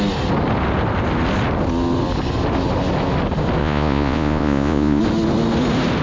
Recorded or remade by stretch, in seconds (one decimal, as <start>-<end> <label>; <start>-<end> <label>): 0.0-3.6 recorded; 3.6-5.0 remade; 5.0-6.0 recorded